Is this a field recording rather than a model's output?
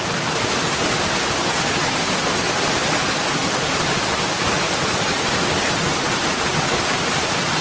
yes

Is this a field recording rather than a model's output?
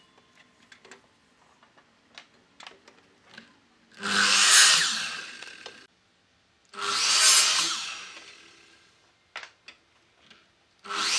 yes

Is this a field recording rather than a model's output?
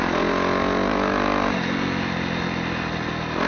yes